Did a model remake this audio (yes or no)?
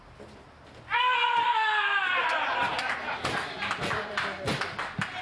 no